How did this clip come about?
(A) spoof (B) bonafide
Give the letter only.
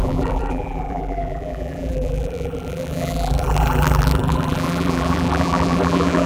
A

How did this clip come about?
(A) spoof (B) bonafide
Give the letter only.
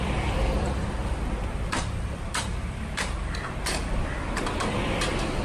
A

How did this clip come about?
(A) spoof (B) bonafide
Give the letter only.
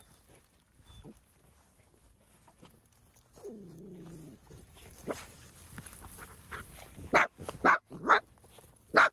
B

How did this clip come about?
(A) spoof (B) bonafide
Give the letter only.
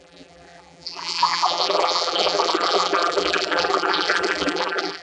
A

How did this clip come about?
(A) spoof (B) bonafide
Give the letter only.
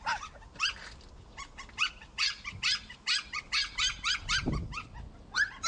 B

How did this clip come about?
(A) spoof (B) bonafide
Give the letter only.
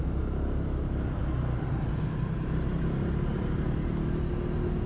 B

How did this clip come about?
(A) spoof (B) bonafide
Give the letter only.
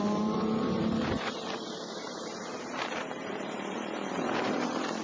A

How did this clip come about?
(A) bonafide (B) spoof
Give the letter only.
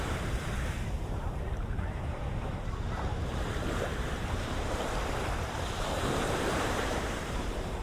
B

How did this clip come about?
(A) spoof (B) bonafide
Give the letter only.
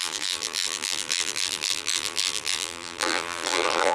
A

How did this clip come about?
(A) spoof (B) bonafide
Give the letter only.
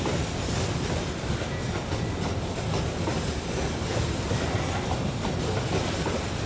B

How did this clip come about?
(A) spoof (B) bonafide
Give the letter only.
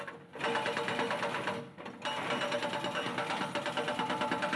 B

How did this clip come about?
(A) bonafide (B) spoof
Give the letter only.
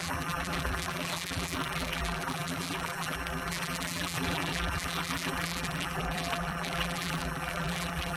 B